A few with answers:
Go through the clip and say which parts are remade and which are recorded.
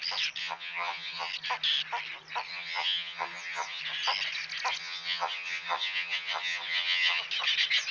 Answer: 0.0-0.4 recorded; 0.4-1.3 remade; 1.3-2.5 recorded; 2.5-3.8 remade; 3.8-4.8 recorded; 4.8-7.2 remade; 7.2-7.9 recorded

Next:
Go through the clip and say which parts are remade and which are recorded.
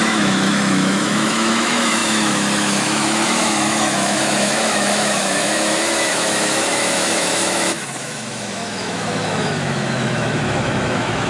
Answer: 0.0-11.3 remade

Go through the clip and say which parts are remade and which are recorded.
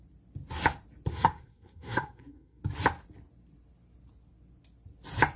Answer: 0.0-1.1 recorded; 1.1-2.6 remade; 2.6-5.4 recorded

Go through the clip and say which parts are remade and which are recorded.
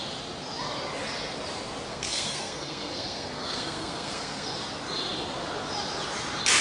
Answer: 0.0-1.9 recorded; 1.9-4.5 remade; 4.5-6.6 recorded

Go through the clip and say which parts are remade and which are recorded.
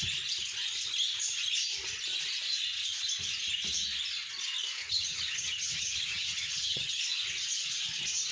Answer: 0.0-4.8 recorded; 4.8-7.0 remade; 7.0-8.3 recorded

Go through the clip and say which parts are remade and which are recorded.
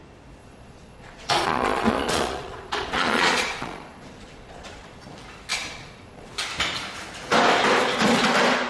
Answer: 0.0-0.4 recorded; 0.4-5.0 remade; 5.0-5.5 recorded; 5.5-6.3 remade; 6.3-8.7 recorded